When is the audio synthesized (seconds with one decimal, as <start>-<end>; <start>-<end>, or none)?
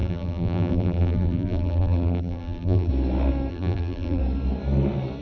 0.0-2.9; 3.5-4.2